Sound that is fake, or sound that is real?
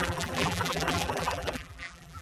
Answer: fake